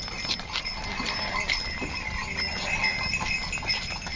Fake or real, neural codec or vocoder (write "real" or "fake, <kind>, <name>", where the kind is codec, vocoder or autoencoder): real